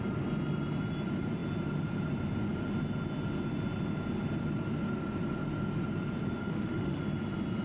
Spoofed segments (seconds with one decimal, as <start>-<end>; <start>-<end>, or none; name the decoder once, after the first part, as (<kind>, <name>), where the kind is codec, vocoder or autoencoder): 6.4-7.0 (autoencoder, DAC-VAE)